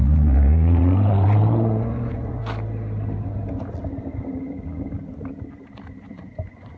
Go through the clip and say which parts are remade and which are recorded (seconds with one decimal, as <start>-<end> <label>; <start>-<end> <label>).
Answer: 0.0-2.4 remade; 2.4-6.0 recorded; 6.0-6.8 remade

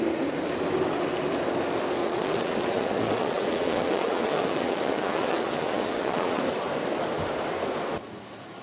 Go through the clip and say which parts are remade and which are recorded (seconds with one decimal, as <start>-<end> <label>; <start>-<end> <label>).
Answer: 0.0-2.0 recorded; 2.0-6.4 remade; 6.4-8.6 recorded

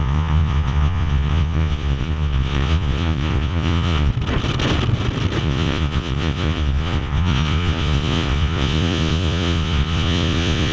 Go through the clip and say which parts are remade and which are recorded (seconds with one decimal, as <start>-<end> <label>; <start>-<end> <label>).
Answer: 0.0-4.1 remade; 4.1-5.4 recorded; 5.4-10.7 remade

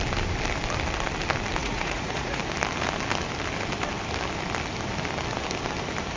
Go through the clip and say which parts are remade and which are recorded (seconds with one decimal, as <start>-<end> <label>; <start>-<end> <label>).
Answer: 0.0-1.6 recorded; 1.6-2.4 remade; 2.4-6.2 recorded

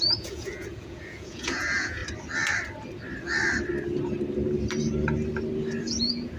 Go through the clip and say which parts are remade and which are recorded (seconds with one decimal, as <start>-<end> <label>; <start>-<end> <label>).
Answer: 0.0-2.0 remade; 2.0-5.8 recorded; 5.8-6.4 remade